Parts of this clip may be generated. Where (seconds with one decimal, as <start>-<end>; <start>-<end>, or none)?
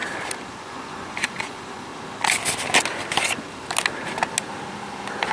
0.6-1.9